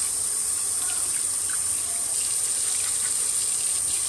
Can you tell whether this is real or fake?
real